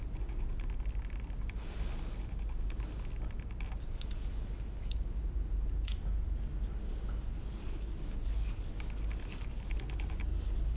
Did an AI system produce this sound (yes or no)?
no